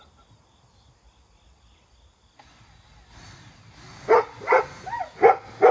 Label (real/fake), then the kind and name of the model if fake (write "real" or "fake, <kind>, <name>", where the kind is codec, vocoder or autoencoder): real